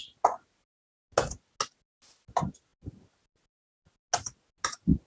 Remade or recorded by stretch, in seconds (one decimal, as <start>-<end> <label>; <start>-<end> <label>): 0.0-5.1 recorded